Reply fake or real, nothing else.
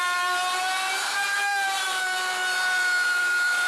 fake